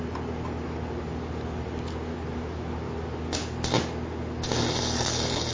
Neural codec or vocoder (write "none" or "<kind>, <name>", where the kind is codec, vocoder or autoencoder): none